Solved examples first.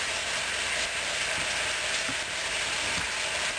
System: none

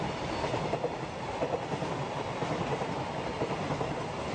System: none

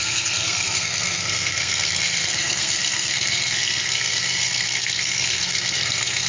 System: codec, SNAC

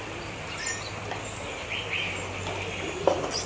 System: none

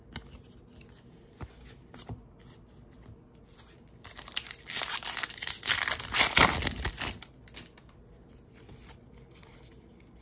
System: none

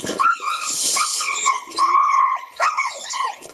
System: codec, HILCodec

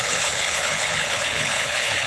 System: codec, HILCodec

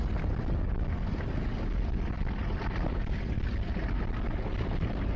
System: none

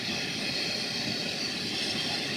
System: none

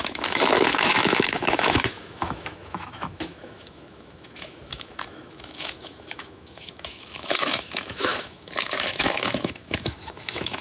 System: autoencoder, DAC-VAE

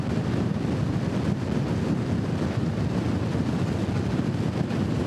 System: none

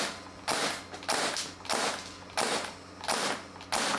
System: none